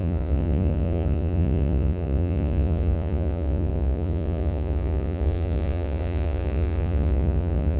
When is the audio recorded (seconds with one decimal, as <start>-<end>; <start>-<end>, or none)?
none